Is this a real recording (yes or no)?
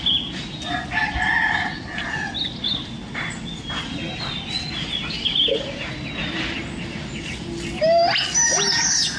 yes